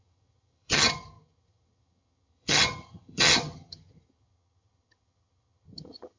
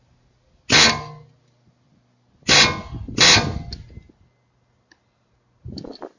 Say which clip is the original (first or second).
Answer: second